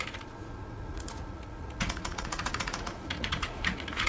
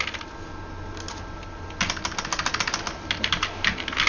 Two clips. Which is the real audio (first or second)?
second